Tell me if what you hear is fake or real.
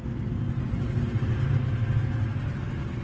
real